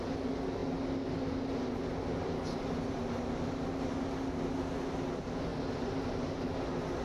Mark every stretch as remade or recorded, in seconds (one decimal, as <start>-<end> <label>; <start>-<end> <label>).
0.0-7.0 recorded

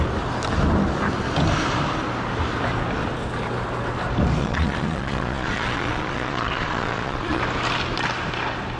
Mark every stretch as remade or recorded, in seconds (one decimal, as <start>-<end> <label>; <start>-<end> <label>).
0.0-4.4 recorded; 4.4-7.4 remade; 7.4-8.8 recorded

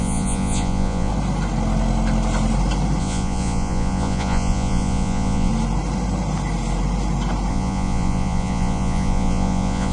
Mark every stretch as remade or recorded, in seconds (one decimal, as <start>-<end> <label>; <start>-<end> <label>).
0.0-1.1 remade; 1.1-3.0 recorded; 3.0-5.5 remade; 5.5-7.5 recorded; 7.5-9.9 remade

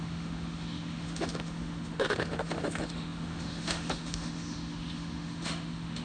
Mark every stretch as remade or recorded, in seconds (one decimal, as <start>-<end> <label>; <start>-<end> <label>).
0.0-6.0 remade

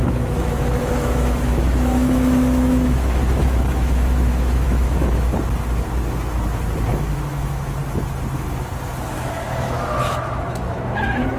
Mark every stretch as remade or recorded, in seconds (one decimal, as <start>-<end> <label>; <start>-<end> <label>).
0.0-5.3 remade; 5.3-6.9 recorded; 6.9-7.8 remade; 7.8-9.2 recorded; 9.2-11.4 remade

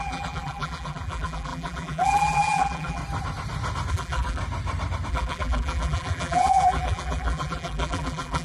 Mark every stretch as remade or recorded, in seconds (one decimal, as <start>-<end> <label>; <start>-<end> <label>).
0.0-3.0 remade; 3.0-3.9 recorded; 3.9-4.4 remade; 4.4-5.1 recorded; 5.1-8.4 remade